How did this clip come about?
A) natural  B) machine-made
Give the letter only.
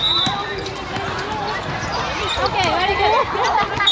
A